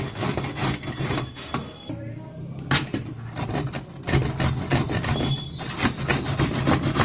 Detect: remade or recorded recorded